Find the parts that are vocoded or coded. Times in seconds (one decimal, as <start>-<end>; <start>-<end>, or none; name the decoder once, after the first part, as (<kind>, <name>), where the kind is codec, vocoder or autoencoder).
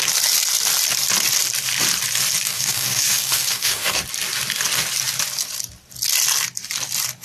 2.5-4.0 (codec, DAC)